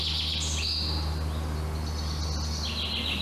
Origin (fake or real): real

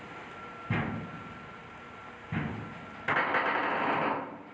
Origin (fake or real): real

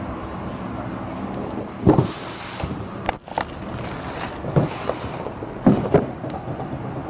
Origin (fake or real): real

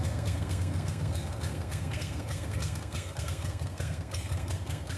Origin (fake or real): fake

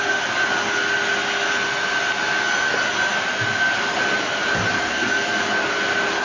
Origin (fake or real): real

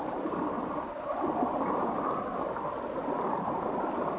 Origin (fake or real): real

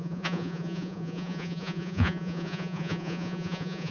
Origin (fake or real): fake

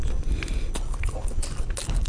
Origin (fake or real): real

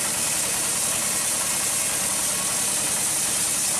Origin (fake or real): real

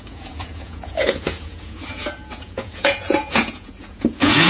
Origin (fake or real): fake